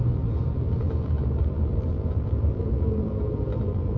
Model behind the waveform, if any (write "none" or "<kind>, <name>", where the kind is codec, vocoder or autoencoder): vocoder, BigVGAN v2